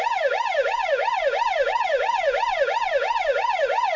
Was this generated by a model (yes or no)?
yes